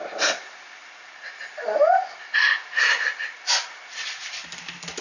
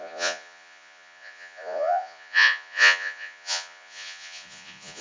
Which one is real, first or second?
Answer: first